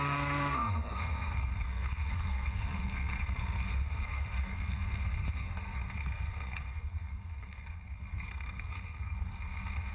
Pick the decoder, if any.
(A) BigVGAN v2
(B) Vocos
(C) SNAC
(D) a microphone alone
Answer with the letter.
C